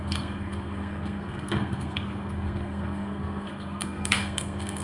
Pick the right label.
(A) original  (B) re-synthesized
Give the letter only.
B